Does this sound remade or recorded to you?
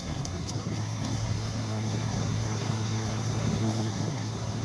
remade